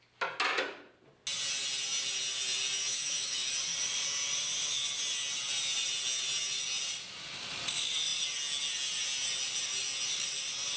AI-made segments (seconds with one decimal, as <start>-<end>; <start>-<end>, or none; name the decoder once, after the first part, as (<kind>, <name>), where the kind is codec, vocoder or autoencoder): 2.9-3.5 (autoencoder, DAC-VAE)